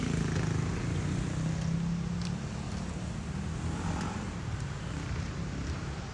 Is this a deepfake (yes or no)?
no